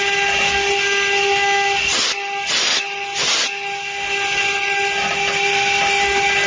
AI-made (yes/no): no